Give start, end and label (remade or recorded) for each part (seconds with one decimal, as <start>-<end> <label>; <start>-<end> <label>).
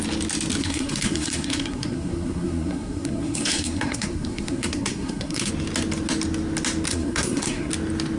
0.0-0.6 recorded; 0.6-5.5 remade; 5.5-6.9 recorded; 6.9-7.7 remade; 7.7-8.2 recorded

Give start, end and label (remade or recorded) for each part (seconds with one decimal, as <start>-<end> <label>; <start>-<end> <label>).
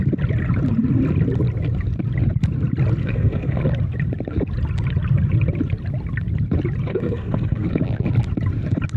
0.0-3.0 recorded; 3.0-3.6 remade; 3.6-6.9 recorded; 6.9-7.8 remade; 7.8-9.0 recorded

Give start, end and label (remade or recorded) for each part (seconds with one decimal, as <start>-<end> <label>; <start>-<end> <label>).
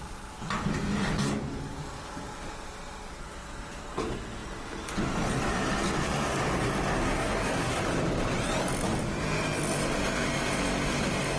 0.0-7.0 recorded; 7.0-7.8 remade; 7.8-11.4 recorded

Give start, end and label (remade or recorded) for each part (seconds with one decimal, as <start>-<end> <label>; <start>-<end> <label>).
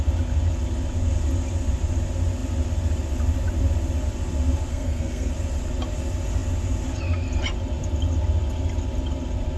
0.0-4.7 recorded; 4.7-5.3 remade; 5.3-9.6 recorded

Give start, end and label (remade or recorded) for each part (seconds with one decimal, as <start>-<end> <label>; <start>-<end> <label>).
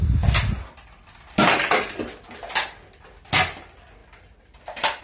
0.0-5.0 recorded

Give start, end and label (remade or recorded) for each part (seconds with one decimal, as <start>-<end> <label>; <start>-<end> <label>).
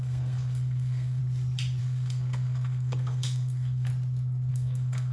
0.0-1.2 remade; 1.2-1.8 recorded; 1.8-3.9 remade; 3.9-4.5 recorded; 4.5-5.1 remade